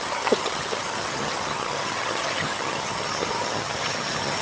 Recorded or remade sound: remade